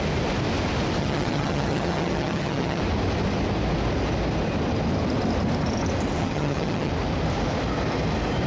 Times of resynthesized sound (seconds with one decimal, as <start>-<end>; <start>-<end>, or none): 1.0-2.8; 6.2-6.9